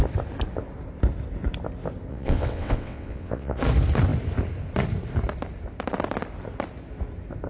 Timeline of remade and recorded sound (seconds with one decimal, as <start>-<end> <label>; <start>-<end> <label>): 0.0-2.1 recorded; 2.1-3.6 remade; 3.6-7.5 recorded